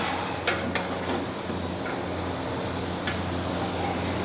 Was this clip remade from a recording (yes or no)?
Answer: no